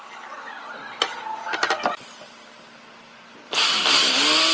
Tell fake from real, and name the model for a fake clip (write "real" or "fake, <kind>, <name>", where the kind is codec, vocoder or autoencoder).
real